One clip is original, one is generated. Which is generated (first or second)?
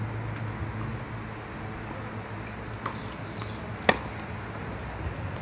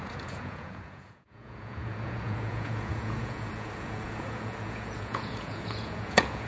second